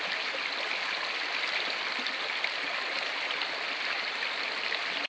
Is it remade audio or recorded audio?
recorded